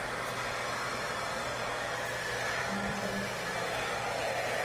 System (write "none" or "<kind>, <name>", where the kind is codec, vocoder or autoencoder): none